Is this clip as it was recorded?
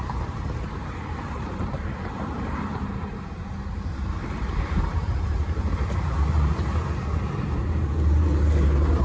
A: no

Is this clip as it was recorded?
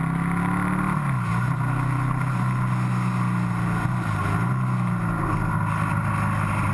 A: yes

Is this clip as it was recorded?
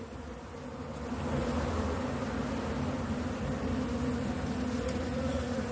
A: yes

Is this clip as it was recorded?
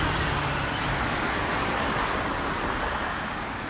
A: yes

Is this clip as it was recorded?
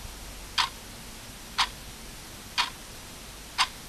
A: yes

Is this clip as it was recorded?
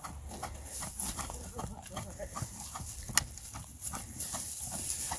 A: yes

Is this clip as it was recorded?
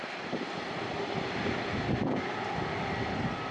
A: no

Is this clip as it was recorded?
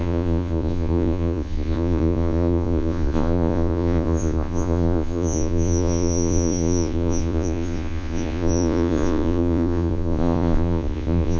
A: no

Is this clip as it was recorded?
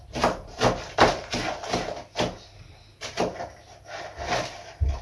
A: yes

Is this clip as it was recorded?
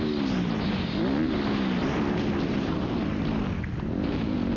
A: yes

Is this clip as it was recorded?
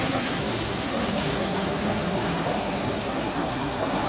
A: no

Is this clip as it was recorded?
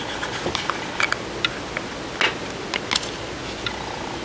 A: yes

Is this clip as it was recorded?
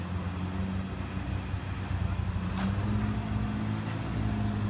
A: yes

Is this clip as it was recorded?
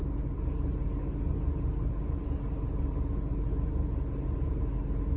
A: yes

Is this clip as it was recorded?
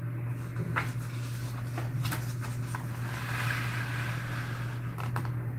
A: yes